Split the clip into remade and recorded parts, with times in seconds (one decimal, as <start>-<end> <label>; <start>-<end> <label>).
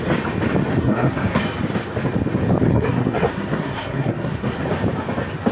0.0-0.8 recorded; 0.8-1.4 remade; 1.4-2.7 recorded; 2.7-4.6 remade; 4.6-5.5 recorded